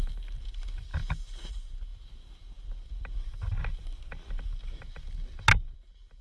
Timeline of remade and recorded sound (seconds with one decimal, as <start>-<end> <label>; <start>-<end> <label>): 0.0-6.2 recorded